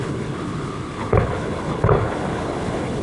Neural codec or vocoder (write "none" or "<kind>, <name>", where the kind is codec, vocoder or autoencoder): codec, HILCodec